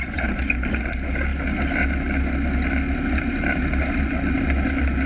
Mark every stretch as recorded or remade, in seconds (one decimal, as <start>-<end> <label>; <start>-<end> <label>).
0.0-5.1 recorded